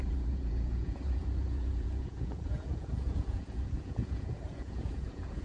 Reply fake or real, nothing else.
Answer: fake